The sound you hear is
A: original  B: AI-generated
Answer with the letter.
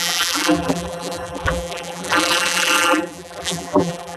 B